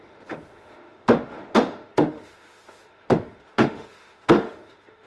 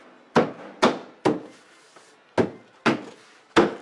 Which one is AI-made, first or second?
first